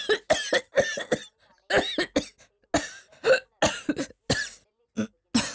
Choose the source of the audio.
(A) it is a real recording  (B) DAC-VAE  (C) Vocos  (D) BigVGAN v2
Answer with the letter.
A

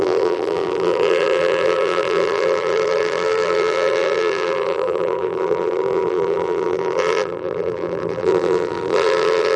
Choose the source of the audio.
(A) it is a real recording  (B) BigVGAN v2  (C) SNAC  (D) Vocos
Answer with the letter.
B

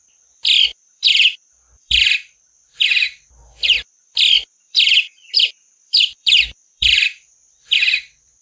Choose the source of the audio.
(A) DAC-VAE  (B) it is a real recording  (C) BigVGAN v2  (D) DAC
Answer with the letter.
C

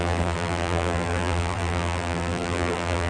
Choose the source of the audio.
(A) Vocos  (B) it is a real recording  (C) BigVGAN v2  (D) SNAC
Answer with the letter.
C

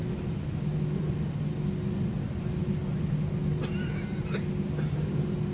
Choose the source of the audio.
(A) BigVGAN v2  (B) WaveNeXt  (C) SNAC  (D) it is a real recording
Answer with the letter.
D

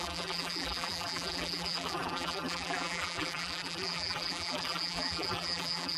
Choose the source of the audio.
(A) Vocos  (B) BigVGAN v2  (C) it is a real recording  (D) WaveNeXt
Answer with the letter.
B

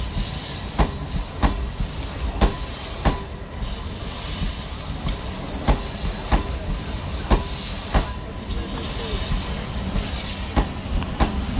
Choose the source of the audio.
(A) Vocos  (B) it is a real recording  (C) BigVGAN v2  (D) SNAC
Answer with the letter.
B